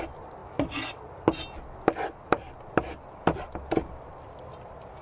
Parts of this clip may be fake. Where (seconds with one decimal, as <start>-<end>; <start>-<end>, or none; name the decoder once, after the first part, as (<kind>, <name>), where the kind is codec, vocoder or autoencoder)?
none